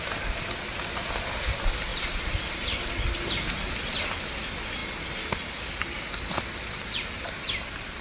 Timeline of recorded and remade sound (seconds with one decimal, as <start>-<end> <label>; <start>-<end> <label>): 0.0-8.0 recorded